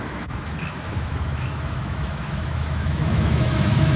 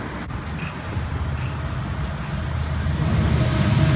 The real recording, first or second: second